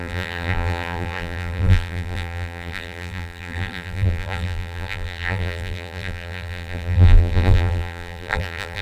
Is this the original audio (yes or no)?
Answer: no